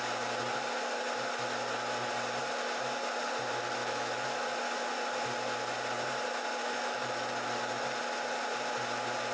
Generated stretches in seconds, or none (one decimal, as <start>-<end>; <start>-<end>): 3.8-4.6; 6.6-7.3